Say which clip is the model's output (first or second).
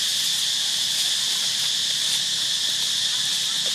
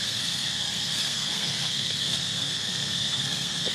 second